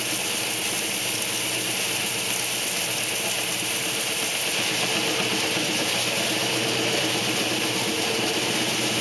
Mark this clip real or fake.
real